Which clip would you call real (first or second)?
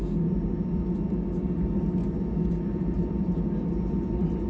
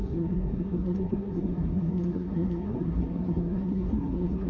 first